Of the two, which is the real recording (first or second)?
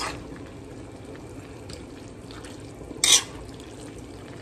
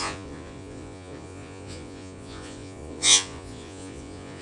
first